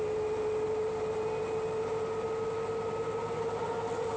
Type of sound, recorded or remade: recorded